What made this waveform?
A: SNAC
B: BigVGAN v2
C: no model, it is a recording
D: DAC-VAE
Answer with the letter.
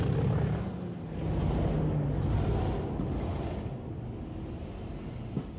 C